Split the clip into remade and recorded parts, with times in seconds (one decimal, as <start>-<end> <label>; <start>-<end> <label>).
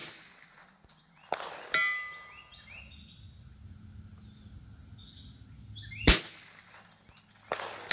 0.0-7.9 recorded